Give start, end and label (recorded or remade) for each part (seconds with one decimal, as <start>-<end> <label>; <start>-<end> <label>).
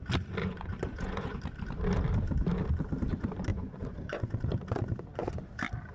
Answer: 0.0-0.4 recorded; 0.4-1.4 remade; 1.4-3.5 recorded; 3.5-4.3 remade; 4.3-5.9 recorded